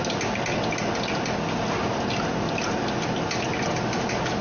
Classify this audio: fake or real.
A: real